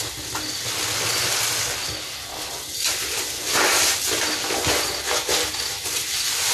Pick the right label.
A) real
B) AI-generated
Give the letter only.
A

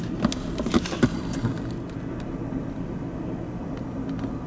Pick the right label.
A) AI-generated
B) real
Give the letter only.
B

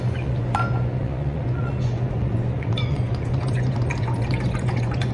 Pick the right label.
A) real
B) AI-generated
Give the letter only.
B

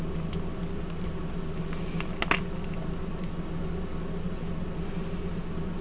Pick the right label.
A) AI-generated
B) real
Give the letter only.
B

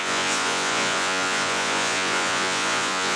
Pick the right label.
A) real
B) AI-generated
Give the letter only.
B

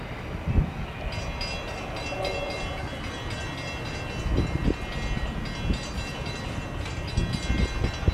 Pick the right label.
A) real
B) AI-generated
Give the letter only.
A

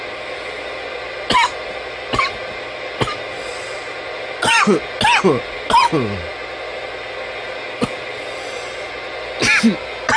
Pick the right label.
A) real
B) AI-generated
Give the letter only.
A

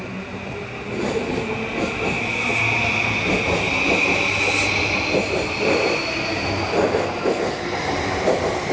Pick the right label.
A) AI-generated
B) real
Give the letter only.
B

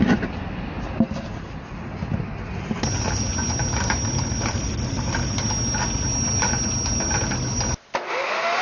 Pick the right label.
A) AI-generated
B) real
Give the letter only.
B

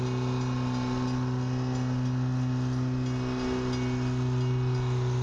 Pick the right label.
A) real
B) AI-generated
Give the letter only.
A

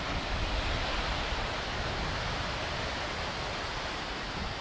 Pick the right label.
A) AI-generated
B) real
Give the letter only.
B